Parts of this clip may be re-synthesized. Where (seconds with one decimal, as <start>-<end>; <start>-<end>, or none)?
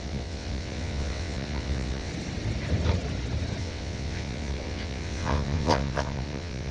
0.0-2.1; 3.6-6.7